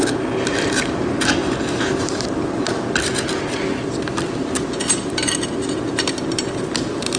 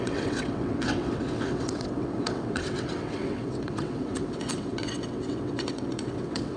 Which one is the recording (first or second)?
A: first